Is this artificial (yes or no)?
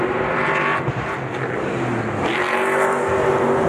no